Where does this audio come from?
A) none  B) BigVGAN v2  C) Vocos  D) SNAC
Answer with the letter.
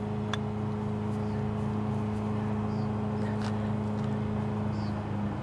A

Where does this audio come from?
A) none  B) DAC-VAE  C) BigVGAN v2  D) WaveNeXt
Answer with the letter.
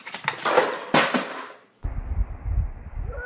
C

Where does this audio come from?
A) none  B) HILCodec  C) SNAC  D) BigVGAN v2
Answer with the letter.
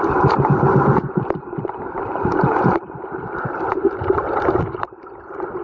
D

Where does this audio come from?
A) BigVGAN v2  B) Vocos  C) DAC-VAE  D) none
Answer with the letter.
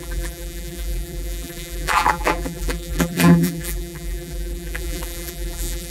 A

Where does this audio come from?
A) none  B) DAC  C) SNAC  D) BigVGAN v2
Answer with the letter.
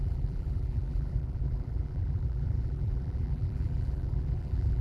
D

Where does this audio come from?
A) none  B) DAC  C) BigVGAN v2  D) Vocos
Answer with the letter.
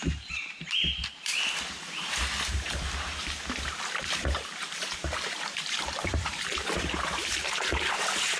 C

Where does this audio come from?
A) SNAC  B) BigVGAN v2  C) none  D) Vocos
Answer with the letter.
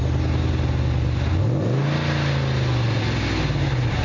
C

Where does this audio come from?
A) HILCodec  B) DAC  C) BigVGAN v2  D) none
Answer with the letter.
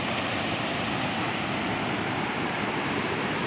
C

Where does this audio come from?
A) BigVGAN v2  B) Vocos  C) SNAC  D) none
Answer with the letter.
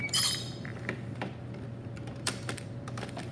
A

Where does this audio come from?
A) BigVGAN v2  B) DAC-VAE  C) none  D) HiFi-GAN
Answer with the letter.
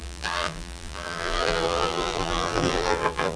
A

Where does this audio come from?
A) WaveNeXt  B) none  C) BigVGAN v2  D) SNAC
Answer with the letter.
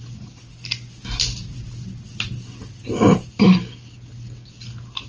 B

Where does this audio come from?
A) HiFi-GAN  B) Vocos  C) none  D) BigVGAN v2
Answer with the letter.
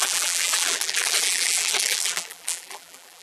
D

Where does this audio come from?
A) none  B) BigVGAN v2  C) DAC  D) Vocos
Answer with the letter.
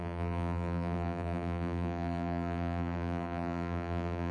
B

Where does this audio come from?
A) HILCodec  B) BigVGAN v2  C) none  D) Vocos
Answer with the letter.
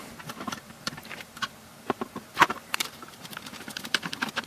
B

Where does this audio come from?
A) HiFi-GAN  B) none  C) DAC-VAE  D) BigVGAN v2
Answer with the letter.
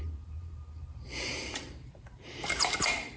D